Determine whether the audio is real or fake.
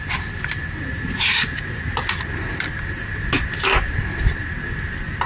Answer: real